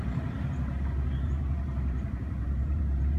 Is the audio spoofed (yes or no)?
yes